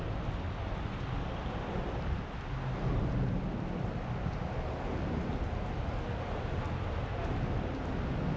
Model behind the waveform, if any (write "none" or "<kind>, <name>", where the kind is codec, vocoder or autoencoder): none